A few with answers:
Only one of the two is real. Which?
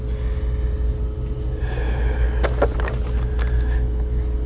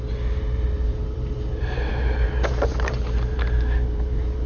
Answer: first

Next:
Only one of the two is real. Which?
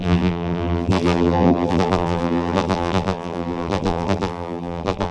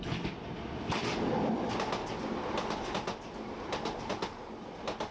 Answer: second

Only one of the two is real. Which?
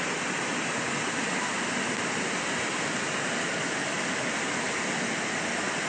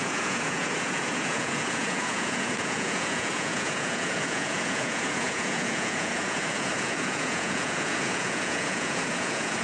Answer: first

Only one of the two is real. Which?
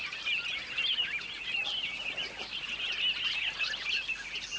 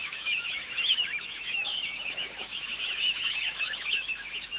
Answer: first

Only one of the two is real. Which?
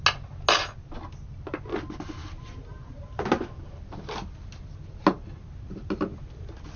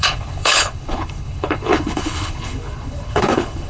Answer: first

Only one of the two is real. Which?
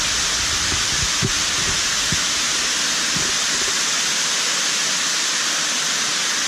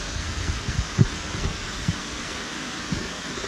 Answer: first